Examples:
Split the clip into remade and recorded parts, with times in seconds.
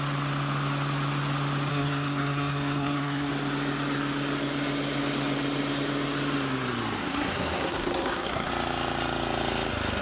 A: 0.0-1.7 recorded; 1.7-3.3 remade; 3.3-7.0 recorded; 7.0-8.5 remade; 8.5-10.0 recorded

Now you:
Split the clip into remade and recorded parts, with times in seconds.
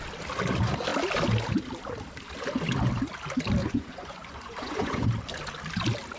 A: 0.0-3.6 recorded; 3.6-5.1 remade; 5.1-6.2 recorded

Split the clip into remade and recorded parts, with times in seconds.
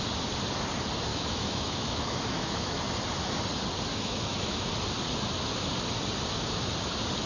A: 0.0-1.1 recorded; 1.1-2.8 remade; 2.8-3.9 recorded; 3.9-4.7 remade; 4.7-7.3 recorded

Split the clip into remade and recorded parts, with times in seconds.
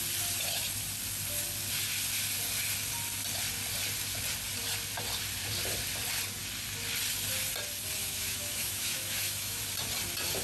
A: 0.0-8.0 recorded; 8.0-9.6 remade; 9.6-10.4 recorded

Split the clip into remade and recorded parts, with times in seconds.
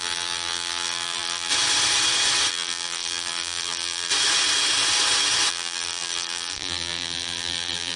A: 0.0-1.5 remade; 1.5-2.5 recorded; 2.5-4.1 remade; 4.1-5.5 recorded; 5.5-8.0 remade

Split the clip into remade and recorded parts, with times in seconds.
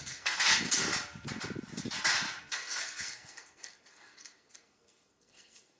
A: 0.0-0.9 remade; 0.9-2.4 recorded; 2.4-5.8 remade